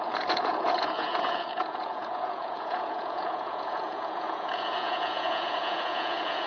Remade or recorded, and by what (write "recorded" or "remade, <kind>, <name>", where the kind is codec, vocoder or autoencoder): remade, vocoder, Vocos